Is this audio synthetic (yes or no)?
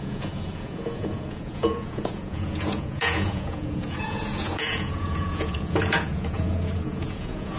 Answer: yes